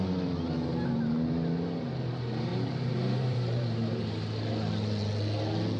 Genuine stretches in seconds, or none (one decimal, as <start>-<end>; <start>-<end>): 0.0-2.5; 4.0-5.8